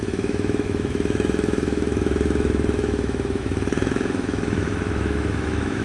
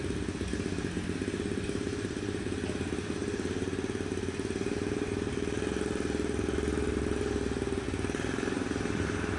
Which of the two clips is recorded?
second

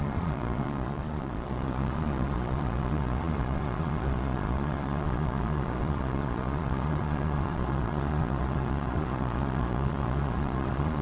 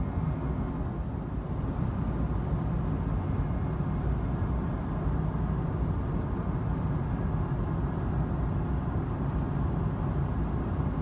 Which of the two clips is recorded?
second